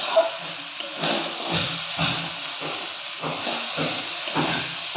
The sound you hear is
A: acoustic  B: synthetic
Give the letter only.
A